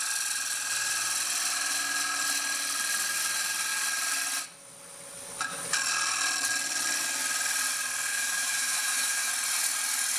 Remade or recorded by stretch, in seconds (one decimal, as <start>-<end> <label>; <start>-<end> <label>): 0.0-8.1 recorded; 8.1-9.3 remade; 9.3-10.2 recorded

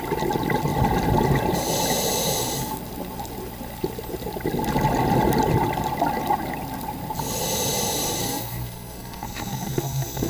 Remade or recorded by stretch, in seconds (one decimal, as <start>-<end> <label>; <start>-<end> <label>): 0.0-8.2 recorded; 8.2-10.3 remade

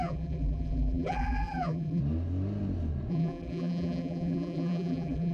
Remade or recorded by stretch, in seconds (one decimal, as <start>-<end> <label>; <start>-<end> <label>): 0.0-2.0 remade; 2.0-3.1 recorded; 3.1-5.3 remade